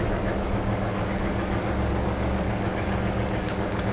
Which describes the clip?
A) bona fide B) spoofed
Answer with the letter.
B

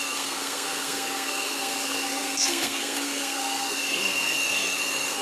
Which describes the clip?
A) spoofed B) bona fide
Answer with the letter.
A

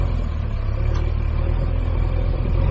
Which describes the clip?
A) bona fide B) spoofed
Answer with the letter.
A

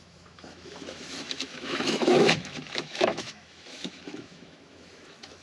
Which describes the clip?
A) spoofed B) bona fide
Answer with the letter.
A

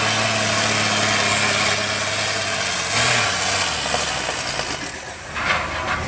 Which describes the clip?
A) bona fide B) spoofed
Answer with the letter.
A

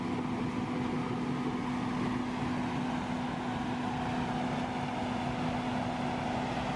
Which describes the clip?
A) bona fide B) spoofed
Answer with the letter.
A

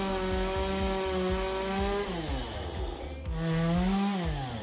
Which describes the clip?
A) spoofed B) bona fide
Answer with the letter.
B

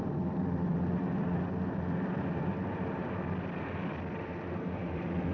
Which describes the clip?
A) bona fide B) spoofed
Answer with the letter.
B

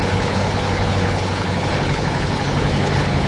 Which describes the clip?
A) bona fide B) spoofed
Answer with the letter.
B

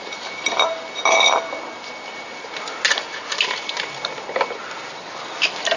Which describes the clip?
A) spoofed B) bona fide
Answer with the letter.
B